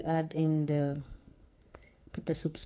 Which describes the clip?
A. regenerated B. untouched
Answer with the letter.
A